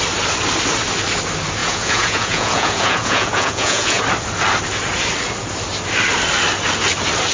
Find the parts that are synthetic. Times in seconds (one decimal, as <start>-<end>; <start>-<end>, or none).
1.6-4.0